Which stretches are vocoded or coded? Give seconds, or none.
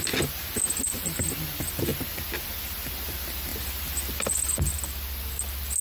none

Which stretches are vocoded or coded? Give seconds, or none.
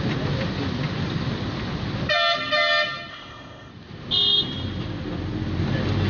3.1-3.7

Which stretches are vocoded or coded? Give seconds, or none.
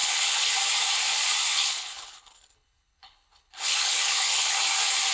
0.0-0.5; 1.5-4.6